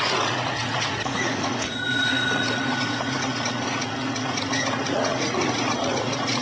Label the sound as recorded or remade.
remade